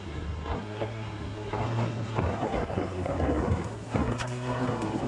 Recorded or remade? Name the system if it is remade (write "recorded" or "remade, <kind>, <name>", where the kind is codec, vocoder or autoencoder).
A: remade, codec, SNAC